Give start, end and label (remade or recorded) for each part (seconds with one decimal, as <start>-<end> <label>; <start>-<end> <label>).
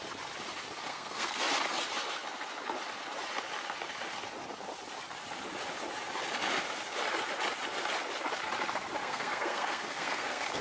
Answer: 0.0-0.9 recorded; 0.9-1.4 remade; 1.4-9.0 recorded; 9.0-10.6 remade